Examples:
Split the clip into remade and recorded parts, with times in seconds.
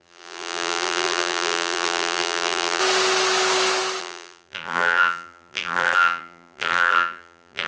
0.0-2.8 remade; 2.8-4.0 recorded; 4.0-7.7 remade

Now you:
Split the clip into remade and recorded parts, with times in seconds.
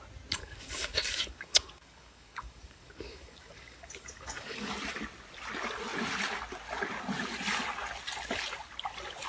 0.0-0.4 recorded; 0.4-4.7 remade; 4.7-9.3 recorded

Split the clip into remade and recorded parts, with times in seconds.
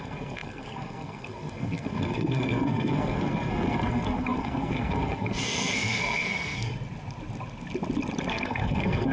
0.0-6.7 remade; 6.7-8.3 recorded; 8.3-9.1 remade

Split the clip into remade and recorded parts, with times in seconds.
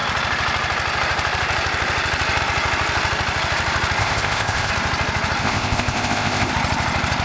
0.0-4.0 recorded; 4.0-4.7 remade; 4.7-5.4 recorded; 5.4-6.5 remade; 6.5-7.2 recorded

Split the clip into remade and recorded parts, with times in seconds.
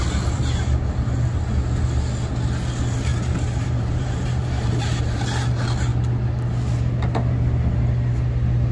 0.0-3.1 recorded; 3.1-5.2 remade; 5.2-8.7 recorded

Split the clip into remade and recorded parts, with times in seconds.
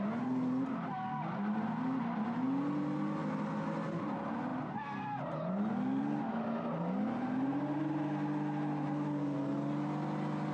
0.0-10.5 recorded